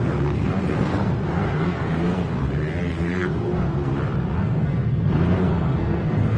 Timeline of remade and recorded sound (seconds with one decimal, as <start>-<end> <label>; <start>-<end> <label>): 0.0-2.3 remade; 2.3-2.9 recorded; 2.9-3.9 remade; 3.9-4.4 recorded; 4.4-6.4 remade